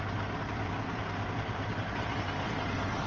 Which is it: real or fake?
fake